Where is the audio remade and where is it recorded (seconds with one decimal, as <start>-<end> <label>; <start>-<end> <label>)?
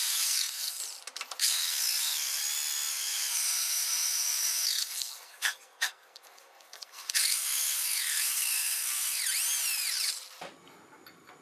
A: 0.0-0.8 remade; 0.8-1.4 recorded; 1.4-2.4 remade; 2.4-2.9 recorded; 2.9-9.2 remade; 9.2-11.4 recorded